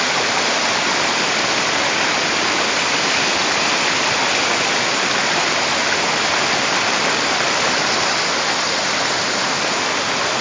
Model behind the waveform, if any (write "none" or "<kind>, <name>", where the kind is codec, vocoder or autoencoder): none